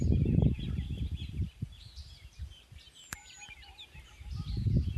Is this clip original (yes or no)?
no